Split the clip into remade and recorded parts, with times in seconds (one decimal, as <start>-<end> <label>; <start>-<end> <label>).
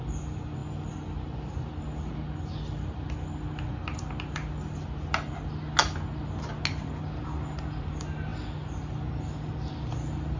0.0-10.4 recorded